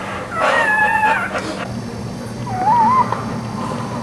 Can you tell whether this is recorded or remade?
recorded